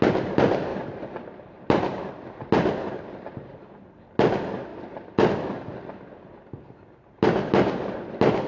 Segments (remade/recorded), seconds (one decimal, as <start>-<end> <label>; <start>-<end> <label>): 0.0-0.7 recorded; 0.7-2.1 remade; 2.1-8.5 recorded